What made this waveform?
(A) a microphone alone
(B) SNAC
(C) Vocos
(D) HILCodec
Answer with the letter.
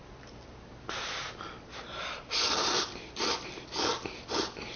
A